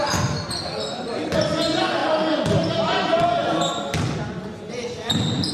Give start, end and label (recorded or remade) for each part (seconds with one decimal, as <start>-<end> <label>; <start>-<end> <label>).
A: 0.0-5.5 recorded